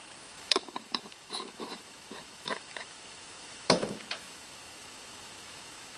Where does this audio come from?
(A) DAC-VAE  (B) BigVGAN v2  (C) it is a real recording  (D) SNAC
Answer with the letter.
A